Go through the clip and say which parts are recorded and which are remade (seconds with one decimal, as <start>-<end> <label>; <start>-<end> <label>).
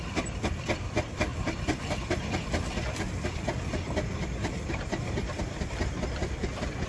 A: 0.0-6.9 remade